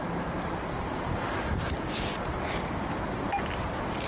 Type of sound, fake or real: real